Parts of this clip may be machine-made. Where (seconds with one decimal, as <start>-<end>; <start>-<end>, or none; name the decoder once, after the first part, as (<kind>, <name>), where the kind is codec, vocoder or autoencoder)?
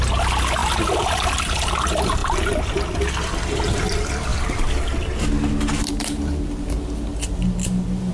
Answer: 0.6-1.7 (vocoder, BigVGAN v2)